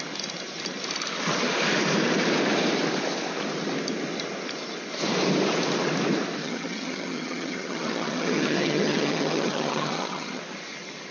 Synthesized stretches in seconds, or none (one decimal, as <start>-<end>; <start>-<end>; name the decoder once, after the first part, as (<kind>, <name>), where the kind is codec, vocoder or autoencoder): 6.4-10.4 (vocoder, HiFi-GAN)